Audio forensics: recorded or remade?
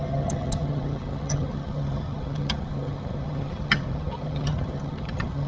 remade